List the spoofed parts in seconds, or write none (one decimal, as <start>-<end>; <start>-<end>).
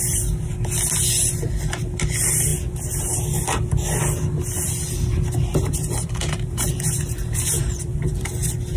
5.5-8.3